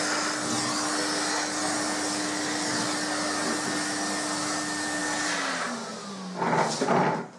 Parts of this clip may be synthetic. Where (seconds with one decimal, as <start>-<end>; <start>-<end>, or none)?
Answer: none